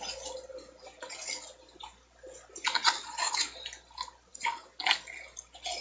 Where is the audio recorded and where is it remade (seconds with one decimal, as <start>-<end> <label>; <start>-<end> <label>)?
0.0-5.8 recorded